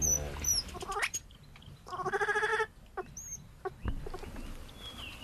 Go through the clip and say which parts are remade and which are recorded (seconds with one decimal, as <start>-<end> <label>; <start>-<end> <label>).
0.0-5.2 recorded